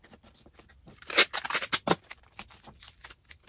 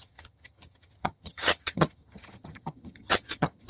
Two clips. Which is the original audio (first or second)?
first